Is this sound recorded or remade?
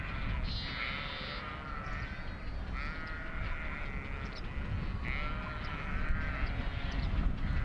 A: recorded